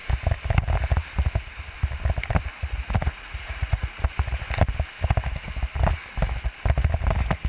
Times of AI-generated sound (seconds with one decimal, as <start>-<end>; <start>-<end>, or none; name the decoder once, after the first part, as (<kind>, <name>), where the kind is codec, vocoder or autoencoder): 2.5-4.0 (vocoder, Vocos)